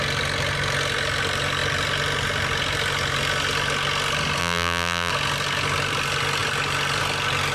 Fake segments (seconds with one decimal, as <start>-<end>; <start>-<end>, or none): 4.4-5.1